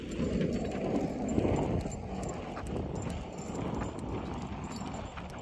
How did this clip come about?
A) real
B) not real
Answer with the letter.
A